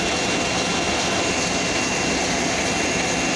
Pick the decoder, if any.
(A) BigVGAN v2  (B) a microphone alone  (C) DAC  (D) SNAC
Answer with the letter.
B